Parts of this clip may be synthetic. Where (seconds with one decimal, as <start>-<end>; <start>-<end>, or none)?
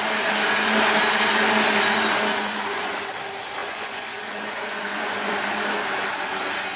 2.3-2.9; 3.6-5.3